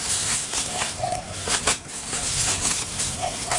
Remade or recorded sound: remade